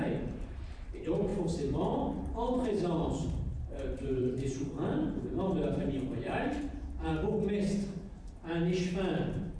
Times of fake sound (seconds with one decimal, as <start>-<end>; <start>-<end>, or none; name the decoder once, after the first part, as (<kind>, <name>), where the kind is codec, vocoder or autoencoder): 0.0-7.1 (vocoder, BigVGAN v2); 9.1-9.6